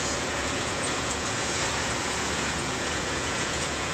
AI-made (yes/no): yes